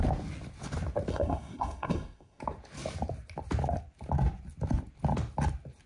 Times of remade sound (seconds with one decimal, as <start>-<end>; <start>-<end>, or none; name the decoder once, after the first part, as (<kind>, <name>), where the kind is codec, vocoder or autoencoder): 1.1-2.4 (codec, SNAC)